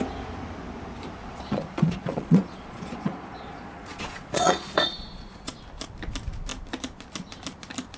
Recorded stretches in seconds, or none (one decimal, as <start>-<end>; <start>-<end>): 0.0-1.2; 5.6-8.0